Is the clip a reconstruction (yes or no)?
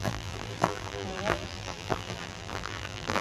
yes